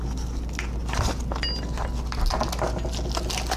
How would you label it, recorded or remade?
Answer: recorded